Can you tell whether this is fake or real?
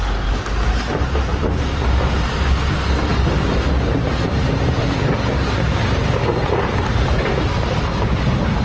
fake